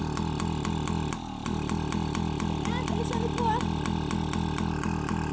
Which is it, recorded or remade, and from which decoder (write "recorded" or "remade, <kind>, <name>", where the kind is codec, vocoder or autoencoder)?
recorded